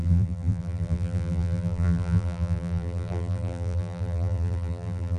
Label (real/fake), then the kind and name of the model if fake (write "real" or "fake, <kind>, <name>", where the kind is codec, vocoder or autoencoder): fake, vocoder, BigVGAN v2